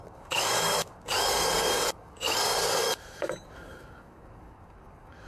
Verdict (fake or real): fake